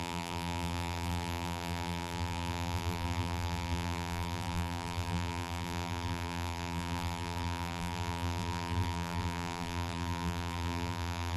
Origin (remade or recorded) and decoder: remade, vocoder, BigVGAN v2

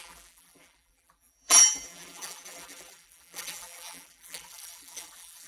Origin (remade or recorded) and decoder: remade, vocoder, BigVGAN v2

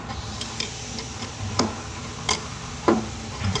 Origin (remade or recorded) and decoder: remade, vocoder, BigVGAN v2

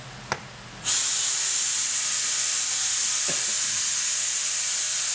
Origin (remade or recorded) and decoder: recorded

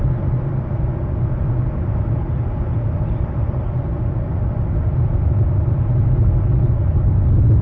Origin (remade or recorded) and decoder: recorded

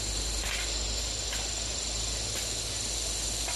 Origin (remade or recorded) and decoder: recorded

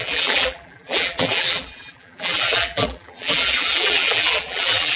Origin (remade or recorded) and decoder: remade, vocoder, BigVGAN v2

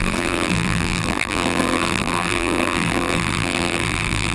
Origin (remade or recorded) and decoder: remade, vocoder, BigVGAN v2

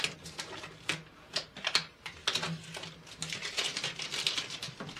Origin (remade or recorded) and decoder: recorded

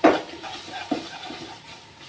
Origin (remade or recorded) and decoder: remade, vocoder, BigVGAN v2